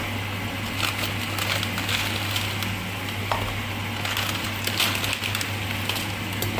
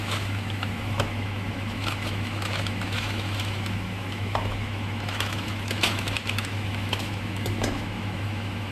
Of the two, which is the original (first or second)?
first